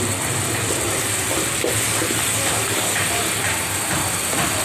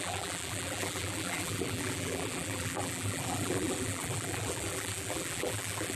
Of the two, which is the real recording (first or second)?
first